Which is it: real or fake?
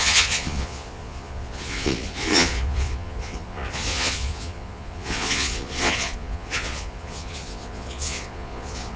fake